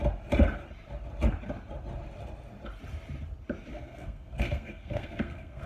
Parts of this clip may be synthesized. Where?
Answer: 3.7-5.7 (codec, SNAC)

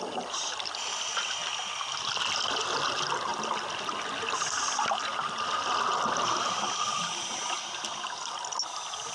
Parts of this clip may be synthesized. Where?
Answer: none

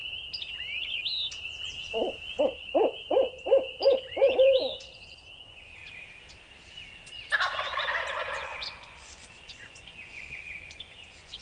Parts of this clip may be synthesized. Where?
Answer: 2.4-5.8 (vocoder, Vocos); 8.3-11.4

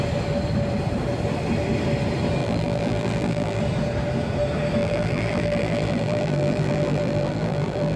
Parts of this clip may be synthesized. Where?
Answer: 2.4-3.6 (vocoder, BigVGAN v2); 4.8-8.0

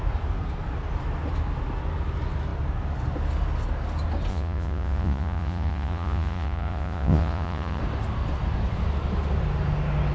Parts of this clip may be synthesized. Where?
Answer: 4.3-7.8 (vocoder, Vocos)

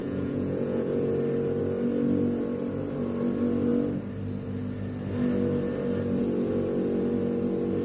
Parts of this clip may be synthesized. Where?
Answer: 0.0-1.1 (vocoder, Vocos)

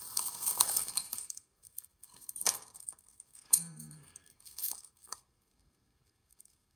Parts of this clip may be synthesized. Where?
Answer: 0.0-6.8 (codec, SNAC)